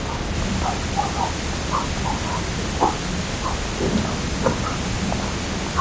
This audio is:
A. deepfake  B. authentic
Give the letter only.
B